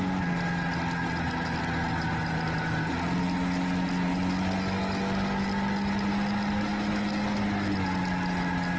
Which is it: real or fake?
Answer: real